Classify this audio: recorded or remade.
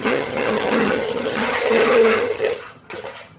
remade